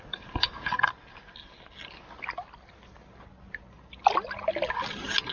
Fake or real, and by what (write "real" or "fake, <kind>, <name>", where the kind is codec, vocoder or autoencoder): real